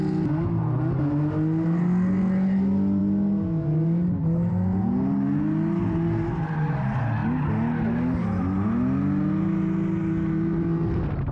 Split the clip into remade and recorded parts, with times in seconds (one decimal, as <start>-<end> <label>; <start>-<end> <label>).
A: 0.0-11.3 recorded